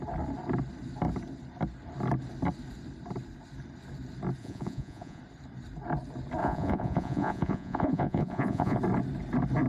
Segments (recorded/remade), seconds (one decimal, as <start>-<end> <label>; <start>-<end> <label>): 0.0-4.4 recorded; 4.4-5.2 remade; 5.2-6.4 recorded; 6.4-8.8 remade; 8.8-9.7 recorded